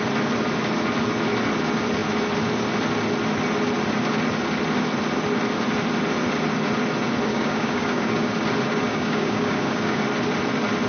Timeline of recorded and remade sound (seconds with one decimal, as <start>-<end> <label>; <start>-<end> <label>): 0.0-7.3 recorded; 7.3-8.3 remade; 8.3-8.9 recorded; 8.9-10.0 remade; 10.0-10.9 recorded